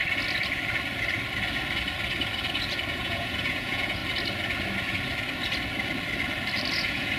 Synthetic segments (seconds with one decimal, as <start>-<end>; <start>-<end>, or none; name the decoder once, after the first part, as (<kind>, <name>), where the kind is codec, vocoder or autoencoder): 2.9-4.0 (vocoder, Vocos); 6.7-7.2